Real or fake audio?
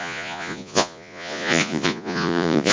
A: fake